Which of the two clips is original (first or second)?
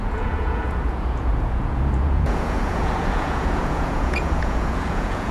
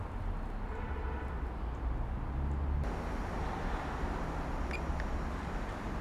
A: second